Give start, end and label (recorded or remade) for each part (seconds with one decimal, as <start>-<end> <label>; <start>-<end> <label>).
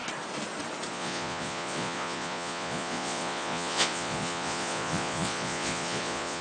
0.0-0.9 recorded; 0.9-6.4 remade